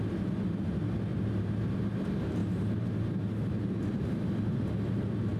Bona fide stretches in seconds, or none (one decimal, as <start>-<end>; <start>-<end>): 0.0-1.1; 1.8-2.4; 3.8-5.4